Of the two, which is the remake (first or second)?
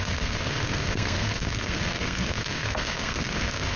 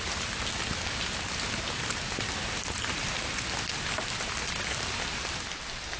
first